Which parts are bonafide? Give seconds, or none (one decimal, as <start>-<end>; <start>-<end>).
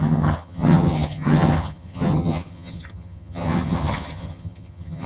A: none